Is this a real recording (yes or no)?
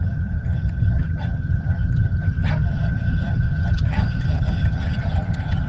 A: no